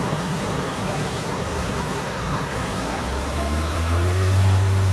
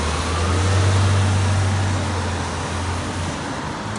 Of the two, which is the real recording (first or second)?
second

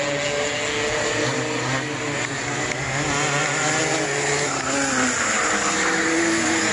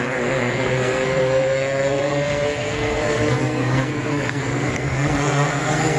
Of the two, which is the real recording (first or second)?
first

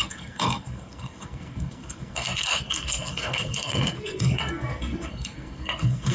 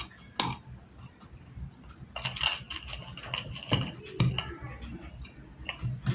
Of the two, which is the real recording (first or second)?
second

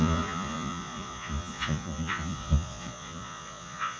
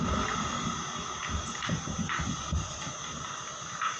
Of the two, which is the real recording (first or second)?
second